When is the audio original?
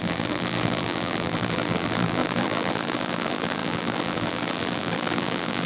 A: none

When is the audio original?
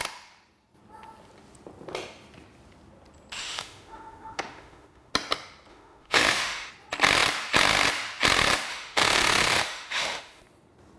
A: 0.0-3.4; 5.1-5.7; 6.7-8.7; 10.4-11.0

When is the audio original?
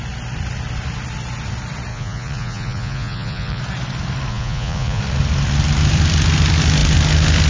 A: 0.0-1.9; 3.6-4.3; 5.0-7.5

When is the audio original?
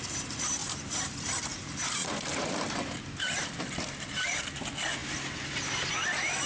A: 0.0-0.6; 1.3-2.0; 4.4-6.5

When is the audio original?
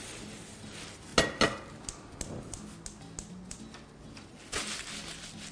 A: 0.0-5.5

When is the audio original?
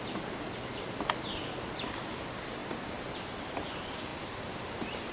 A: none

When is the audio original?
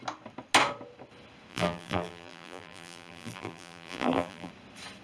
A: 0.0-1.5; 4.5-5.0